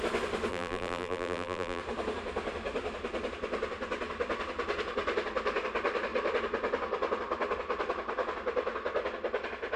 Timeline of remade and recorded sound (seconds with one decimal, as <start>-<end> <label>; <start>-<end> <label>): 0.0-0.5 recorded; 0.5-1.8 remade; 1.8-9.8 recorded